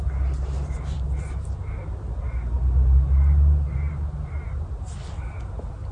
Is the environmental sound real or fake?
real